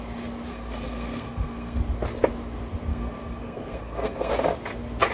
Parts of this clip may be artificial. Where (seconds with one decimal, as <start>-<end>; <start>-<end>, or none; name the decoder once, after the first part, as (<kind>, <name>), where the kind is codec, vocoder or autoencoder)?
0.5-1.8 (codec, SNAC); 2.9-4.3